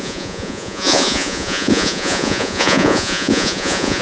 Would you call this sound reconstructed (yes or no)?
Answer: yes